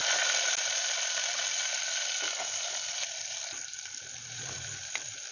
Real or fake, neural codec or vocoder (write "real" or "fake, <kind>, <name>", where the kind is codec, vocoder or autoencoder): real